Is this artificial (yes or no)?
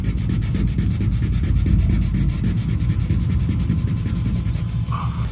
no